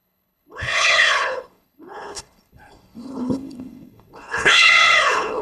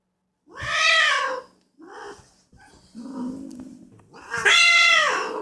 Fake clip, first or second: first